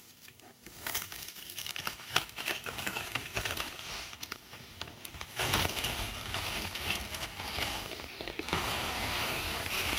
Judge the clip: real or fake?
fake